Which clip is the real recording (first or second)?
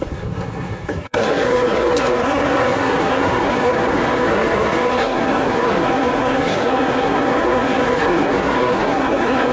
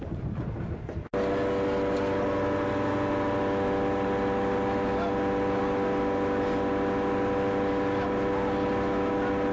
second